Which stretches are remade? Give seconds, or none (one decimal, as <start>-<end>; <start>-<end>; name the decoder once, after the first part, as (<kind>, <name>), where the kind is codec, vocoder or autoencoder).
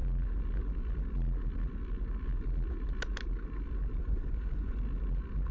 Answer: 4.0-4.8 (vocoder, Vocos)